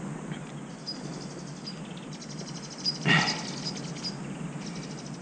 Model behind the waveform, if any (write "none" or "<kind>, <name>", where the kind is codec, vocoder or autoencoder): none